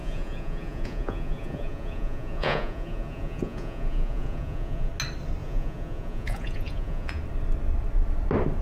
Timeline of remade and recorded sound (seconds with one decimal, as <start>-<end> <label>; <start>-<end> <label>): 0.0-4.9 remade; 4.9-5.4 recorded; 5.4-7.2 remade; 7.2-8.6 recorded